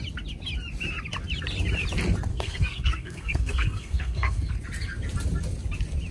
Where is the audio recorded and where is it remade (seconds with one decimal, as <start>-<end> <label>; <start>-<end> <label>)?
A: 0.0-2.3 recorded; 2.3-4.5 remade; 4.5-6.1 recorded